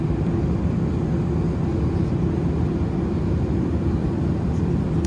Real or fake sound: real